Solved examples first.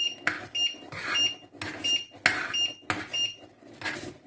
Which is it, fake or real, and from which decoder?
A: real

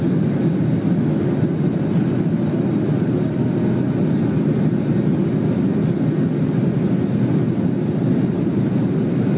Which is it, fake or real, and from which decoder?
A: real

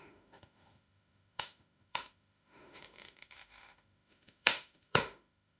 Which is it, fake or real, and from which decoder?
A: fake, autoencoder, DAC-VAE